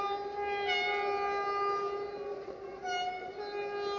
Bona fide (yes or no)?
yes